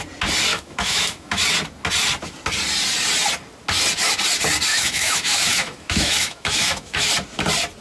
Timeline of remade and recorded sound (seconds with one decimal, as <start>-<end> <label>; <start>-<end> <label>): 0.0-0.5 recorded; 0.5-1.4 remade; 1.4-4.7 recorded; 4.7-7.1 remade; 7.1-7.8 recorded